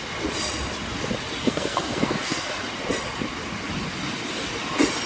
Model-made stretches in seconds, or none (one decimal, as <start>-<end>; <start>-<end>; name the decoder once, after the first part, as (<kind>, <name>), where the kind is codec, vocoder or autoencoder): 1.4-2.5 (codec, SNAC)